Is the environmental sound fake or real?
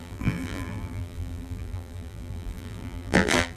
fake